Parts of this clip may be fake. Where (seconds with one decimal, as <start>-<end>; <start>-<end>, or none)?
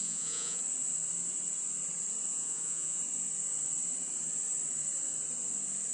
0.0-0.6; 2.3-3.0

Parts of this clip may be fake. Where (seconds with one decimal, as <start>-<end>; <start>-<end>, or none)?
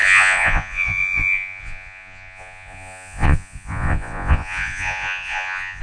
0.0-5.8